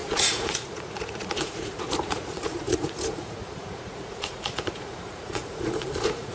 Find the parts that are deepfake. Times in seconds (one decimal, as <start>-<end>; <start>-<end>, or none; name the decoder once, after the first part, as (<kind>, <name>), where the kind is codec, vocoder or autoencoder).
0.0-6.3 (vocoder, Vocos)